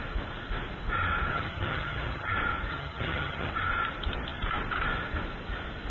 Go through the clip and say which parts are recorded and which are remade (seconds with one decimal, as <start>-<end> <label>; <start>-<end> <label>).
0.0-1.3 recorded; 1.3-2.3 remade; 2.3-2.7 recorded; 2.7-3.5 remade; 3.5-5.9 recorded